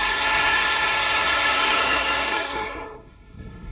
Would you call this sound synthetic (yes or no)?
yes